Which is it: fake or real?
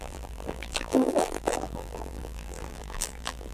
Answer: fake